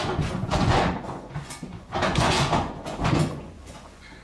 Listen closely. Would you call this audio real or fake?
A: fake